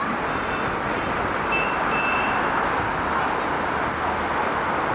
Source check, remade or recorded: recorded